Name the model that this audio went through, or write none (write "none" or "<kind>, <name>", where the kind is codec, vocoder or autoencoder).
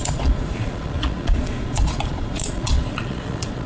vocoder, Vocos